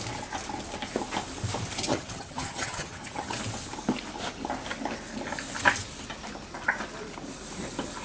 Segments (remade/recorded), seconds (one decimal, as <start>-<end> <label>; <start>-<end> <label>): 0.0-1.9 recorded; 1.9-3.4 remade; 3.4-8.0 recorded